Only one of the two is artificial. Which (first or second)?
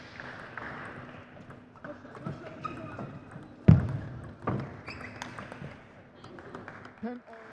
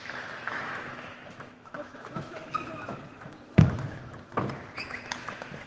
second